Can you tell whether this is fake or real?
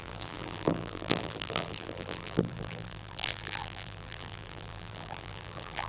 fake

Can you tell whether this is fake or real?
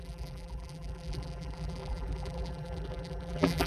fake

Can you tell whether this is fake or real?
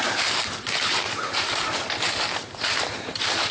fake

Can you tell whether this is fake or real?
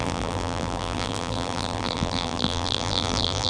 fake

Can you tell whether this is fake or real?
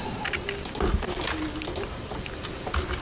real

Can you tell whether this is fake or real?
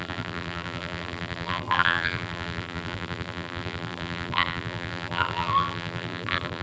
fake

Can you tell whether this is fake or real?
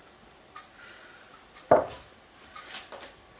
fake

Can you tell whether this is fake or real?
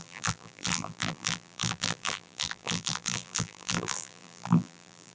fake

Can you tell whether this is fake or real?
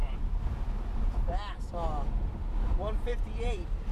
fake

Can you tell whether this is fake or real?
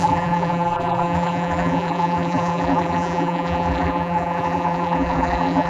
fake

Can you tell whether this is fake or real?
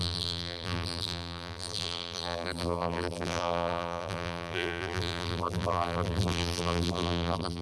fake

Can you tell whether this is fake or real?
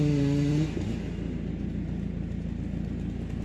real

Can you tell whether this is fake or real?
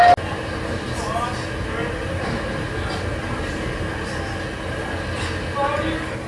real